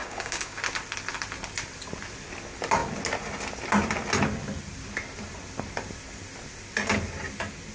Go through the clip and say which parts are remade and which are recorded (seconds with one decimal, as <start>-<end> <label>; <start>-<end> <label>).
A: 0.0-0.6 remade; 0.6-7.7 recorded